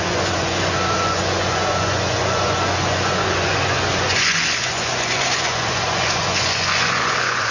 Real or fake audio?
fake